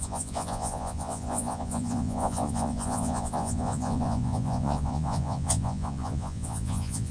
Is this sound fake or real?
fake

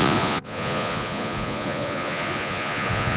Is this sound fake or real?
fake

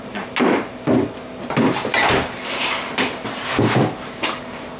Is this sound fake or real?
real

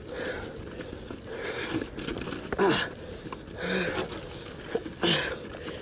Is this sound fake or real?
real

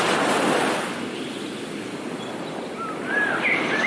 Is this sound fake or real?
real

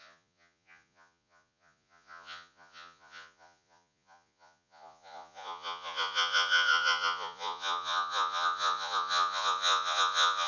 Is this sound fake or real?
fake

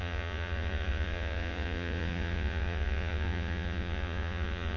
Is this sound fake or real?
fake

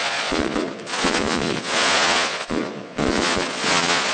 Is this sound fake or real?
fake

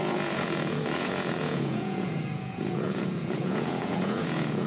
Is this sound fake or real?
fake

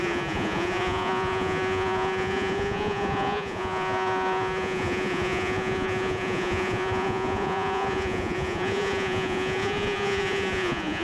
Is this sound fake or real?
fake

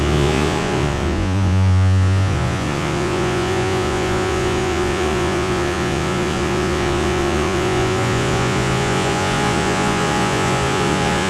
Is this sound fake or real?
fake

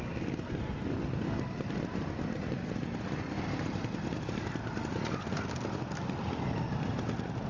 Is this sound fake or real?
real